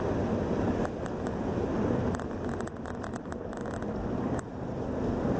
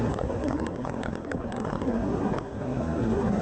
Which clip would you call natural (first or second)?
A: first